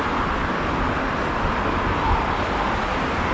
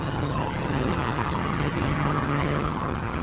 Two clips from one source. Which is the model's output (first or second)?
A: second